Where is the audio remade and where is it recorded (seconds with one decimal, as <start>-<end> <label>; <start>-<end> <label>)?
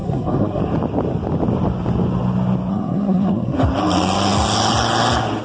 0.0-0.6 remade; 0.6-2.7 recorded; 2.7-3.6 remade; 3.6-5.4 recorded